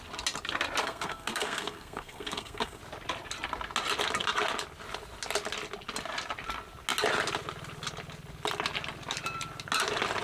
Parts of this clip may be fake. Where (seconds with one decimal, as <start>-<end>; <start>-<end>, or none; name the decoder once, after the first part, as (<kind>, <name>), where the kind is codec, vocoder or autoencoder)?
0.8-2.8 (codec, SNAC)